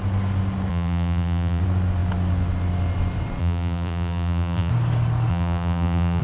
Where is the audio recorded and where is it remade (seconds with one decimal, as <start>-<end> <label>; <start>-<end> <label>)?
0.0-0.7 recorded; 0.7-1.6 remade; 1.6-3.4 recorded; 3.4-4.7 remade; 4.7-5.3 recorded; 5.3-6.2 remade